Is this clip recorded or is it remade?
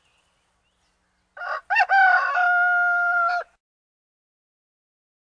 recorded